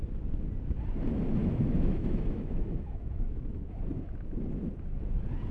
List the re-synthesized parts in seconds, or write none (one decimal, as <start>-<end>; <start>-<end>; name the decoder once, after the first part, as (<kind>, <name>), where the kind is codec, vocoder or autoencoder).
1.4-3.8 (autoencoder, DAC-VAE)